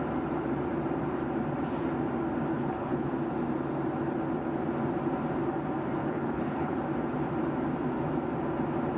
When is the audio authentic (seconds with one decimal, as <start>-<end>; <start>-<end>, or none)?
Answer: 0.0-2.5; 3.1-6.0; 6.8-9.0